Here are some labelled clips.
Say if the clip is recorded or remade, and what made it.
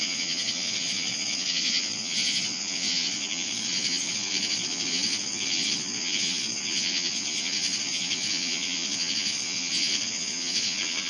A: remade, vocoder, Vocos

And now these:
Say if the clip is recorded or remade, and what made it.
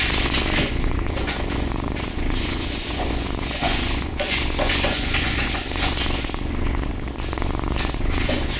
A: remade, vocoder, Vocos